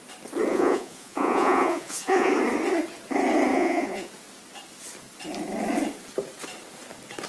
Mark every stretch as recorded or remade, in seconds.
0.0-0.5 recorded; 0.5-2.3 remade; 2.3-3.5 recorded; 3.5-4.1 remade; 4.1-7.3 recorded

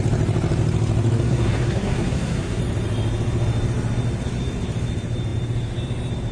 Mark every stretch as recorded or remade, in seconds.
0.0-1.2 recorded; 1.2-2.6 remade; 2.6-6.3 recorded

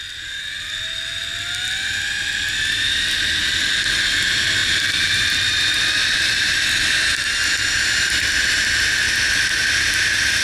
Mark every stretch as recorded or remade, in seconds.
0.0-4.6 recorded; 4.6-6.7 remade; 6.7-10.4 recorded

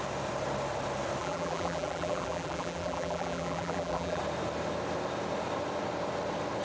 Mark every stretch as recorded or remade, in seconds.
0.0-1.2 recorded; 1.2-4.2 remade; 4.2-6.6 recorded

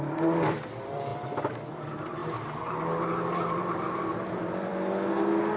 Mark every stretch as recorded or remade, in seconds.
0.0-2.2 remade; 2.2-3.3 recorded; 3.3-4.7 remade; 4.7-5.6 recorded

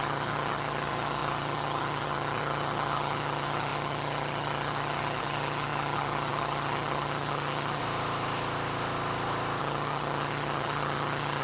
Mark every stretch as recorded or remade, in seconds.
0.0-7.8 remade; 7.8-9.6 recorded; 9.6-11.4 remade

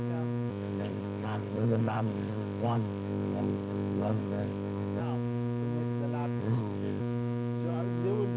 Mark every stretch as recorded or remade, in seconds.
0.0-0.5 recorded; 0.5-5.0 remade; 5.0-6.4 recorded; 6.4-7.0 remade; 7.0-8.4 recorded